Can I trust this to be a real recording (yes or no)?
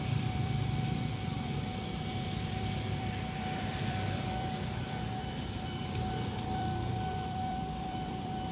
no